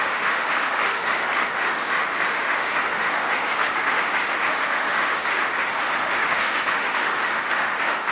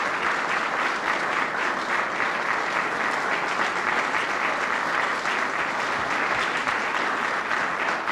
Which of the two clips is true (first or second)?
second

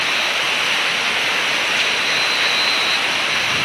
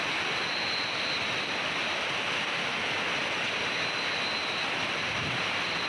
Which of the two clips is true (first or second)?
first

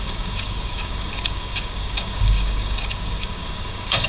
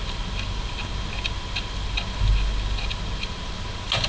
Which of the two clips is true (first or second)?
second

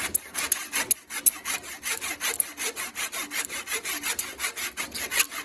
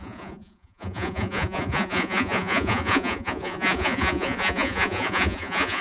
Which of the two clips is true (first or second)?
first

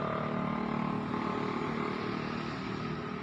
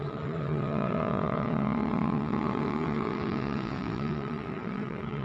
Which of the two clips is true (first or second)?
first